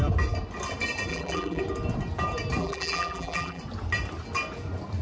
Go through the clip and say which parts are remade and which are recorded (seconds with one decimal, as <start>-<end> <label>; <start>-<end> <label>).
0.0-1.1 recorded; 1.1-1.6 remade; 1.6-2.6 recorded; 2.6-3.6 remade; 3.6-5.0 recorded